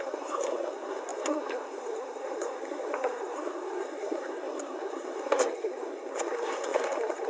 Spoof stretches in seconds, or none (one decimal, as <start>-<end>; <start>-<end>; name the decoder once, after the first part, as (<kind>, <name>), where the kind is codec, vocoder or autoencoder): 0.0-7.3 (codec, SNAC)